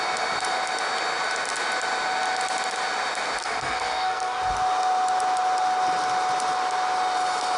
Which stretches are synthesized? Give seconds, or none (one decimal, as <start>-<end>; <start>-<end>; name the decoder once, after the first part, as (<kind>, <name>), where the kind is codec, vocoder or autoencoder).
3.4-4.4 (codec, SNAC)